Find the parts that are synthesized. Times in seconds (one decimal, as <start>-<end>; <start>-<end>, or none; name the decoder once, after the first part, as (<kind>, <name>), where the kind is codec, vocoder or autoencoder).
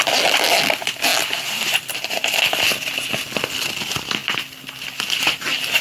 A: none